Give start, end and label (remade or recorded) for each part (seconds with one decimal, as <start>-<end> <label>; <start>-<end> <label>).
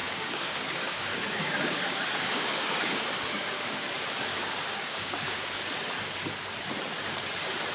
0.0-3.9 remade; 3.9-4.3 recorded; 4.3-5.6 remade; 5.6-7.7 recorded